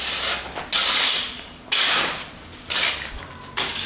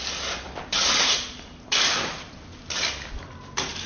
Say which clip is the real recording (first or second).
first